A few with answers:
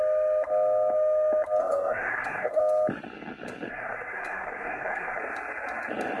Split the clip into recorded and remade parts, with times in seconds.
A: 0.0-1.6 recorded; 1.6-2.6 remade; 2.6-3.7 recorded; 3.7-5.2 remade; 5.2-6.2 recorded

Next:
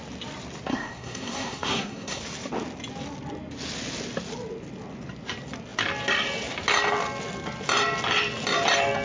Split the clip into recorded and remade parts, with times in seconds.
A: 0.0-0.7 recorded; 0.7-2.2 remade; 2.2-9.0 recorded

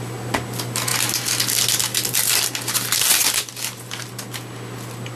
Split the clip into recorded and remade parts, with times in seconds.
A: 0.0-5.2 recorded

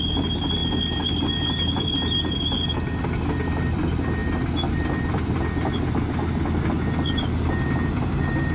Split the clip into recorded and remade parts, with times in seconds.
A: 0.0-8.5 recorded